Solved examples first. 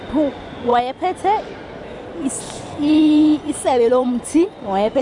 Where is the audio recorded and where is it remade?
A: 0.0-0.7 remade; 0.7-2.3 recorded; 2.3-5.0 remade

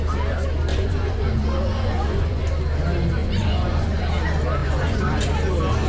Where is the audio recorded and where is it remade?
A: 0.0-0.7 recorded; 0.7-2.4 remade; 2.4-3.2 recorded; 3.2-4.0 remade; 4.0-4.6 recorded; 4.6-5.3 remade; 5.3-5.9 recorded

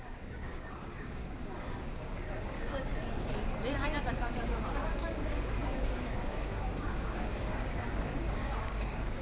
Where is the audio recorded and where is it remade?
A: 0.0-2.9 remade; 2.9-4.1 recorded; 4.1-9.2 remade

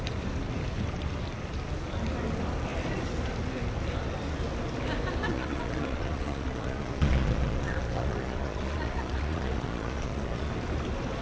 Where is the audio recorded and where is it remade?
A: 0.0-5.3 recorded; 5.3-10.5 remade; 10.5-11.2 recorded

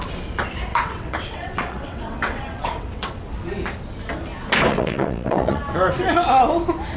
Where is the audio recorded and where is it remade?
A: 0.0-0.7 recorded; 0.7-3.3 remade; 3.3-4.7 recorded; 4.7-5.6 remade; 5.6-7.0 recorded

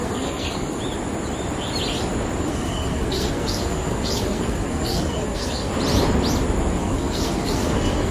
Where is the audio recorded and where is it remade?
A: 0.0-0.8 remade; 0.8-2.4 recorded; 2.4-5.7 remade; 5.7-6.8 recorded; 6.8-8.1 remade